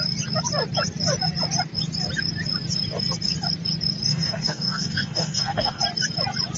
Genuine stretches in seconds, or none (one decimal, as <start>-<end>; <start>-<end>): 0.0-4.1; 5.8-6.6